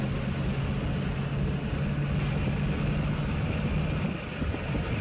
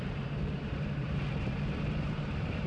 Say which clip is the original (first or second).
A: first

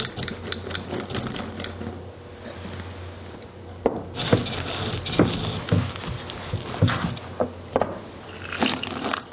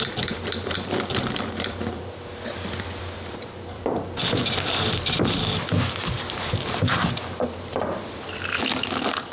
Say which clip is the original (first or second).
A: first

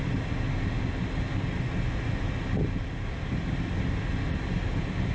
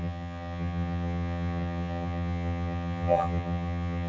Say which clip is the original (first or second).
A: first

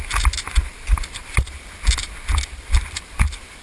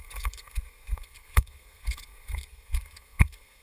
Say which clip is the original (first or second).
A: first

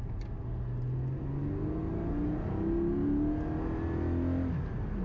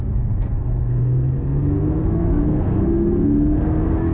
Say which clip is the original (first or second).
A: first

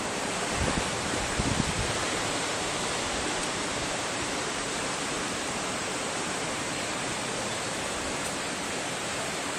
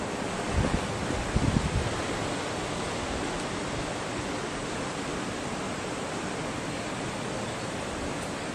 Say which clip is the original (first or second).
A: second